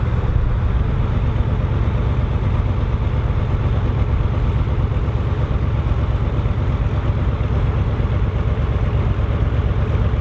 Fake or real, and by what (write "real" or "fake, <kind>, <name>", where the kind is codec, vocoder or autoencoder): real